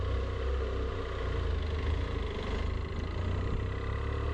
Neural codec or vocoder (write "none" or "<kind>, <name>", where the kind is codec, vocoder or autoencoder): none